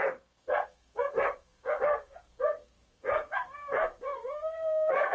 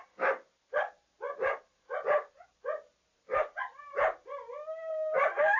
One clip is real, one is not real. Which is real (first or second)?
second